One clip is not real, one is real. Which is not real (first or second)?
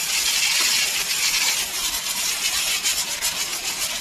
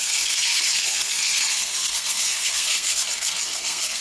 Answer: second